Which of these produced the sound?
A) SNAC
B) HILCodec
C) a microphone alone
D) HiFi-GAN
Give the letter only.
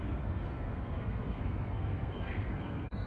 A